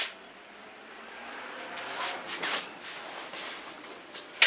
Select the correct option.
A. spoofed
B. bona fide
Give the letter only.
B